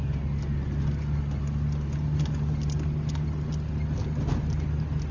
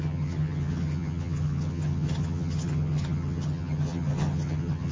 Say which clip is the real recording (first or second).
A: first